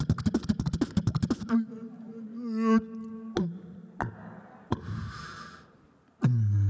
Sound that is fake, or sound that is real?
real